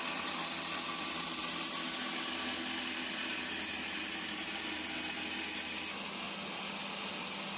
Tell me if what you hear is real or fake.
real